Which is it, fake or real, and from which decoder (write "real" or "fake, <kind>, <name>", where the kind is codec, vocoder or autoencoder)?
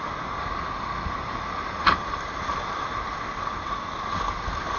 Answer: real